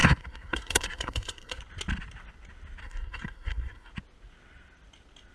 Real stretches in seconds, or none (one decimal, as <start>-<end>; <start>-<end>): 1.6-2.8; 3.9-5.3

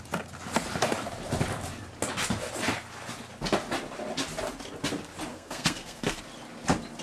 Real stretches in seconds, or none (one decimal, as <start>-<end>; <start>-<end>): 0.0-5.3; 6.2-7.0

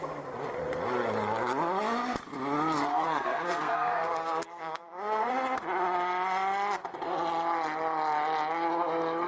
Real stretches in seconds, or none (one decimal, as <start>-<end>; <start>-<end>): 0.0-2.9; 5.3-9.3

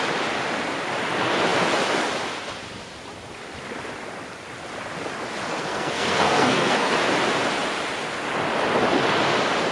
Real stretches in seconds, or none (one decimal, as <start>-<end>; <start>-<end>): 0.0-5.5; 6.9-9.7

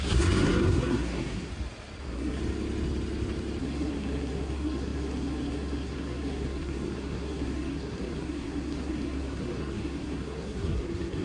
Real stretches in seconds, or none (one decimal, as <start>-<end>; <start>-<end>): 1.5-2.0; 2.4-3.6

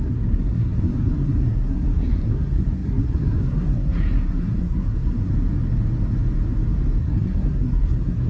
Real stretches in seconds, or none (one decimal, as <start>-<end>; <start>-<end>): 5.3-7.0